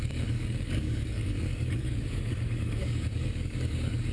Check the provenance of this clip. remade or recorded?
remade